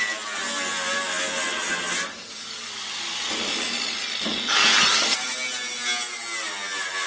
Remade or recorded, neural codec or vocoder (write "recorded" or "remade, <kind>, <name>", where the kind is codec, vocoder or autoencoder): recorded